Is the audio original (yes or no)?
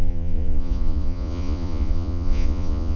no